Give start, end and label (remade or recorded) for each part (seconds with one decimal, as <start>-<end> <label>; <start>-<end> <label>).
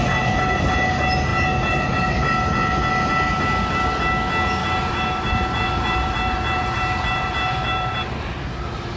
0.0-3.3 recorded; 3.3-4.0 remade; 4.0-4.6 recorded; 4.6-8.3 remade; 8.3-9.0 recorded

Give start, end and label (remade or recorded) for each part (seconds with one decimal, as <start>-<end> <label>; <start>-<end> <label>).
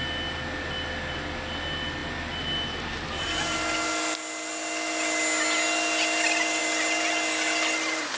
0.0-8.2 recorded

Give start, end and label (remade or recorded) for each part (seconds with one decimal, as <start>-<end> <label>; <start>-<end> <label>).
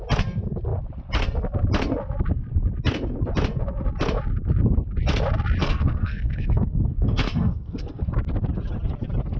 0.0-5.6 recorded; 5.6-8.0 remade; 8.0-9.4 recorded